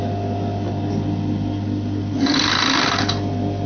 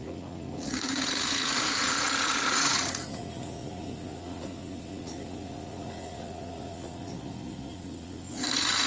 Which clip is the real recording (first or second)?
first